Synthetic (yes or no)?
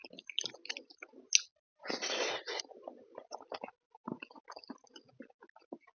no